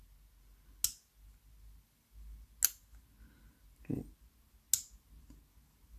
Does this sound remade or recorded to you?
recorded